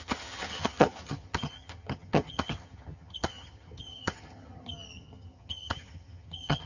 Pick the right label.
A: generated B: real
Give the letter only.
A